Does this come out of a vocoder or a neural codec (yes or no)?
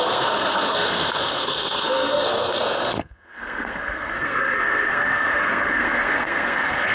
yes